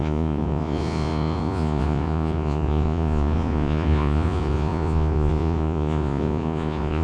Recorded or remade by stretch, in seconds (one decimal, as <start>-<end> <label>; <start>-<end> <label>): 0.0-7.0 remade